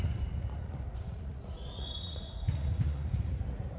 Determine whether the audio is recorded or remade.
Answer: remade